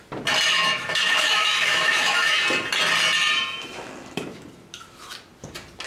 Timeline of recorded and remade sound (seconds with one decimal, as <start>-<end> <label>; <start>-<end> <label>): 0.0-0.5 recorded; 0.5-2.4 remade; 2.4-5.9 recorded